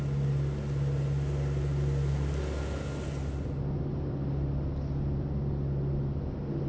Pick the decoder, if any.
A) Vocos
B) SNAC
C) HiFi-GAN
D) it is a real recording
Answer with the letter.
D